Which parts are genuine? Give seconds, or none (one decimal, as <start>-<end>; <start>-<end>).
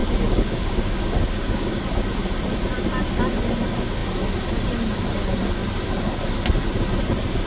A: 1.8-7.5